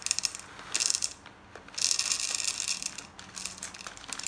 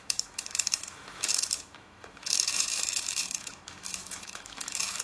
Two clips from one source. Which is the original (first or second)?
first